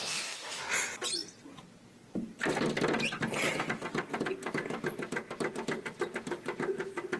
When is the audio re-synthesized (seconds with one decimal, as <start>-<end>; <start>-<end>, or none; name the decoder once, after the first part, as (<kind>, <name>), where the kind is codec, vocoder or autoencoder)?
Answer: 0.0-0.6 (codec, DAC)

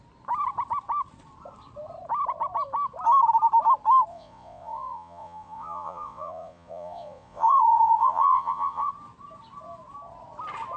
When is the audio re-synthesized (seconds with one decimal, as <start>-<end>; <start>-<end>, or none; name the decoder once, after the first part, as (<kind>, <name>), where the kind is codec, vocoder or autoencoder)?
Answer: 4.1-8.9 (vocoder, Vocos)

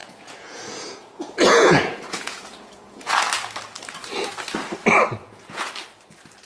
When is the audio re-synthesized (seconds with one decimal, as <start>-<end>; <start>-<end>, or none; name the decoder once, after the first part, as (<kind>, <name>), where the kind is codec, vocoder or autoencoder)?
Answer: 0.0-3.2 (vocoder, Vocos); 5.2-5.7

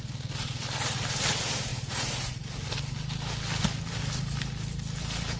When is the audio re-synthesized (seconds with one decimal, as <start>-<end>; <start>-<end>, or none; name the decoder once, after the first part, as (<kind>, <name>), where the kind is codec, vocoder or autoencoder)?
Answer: 1.7-2.3 (vocoder, Vocos)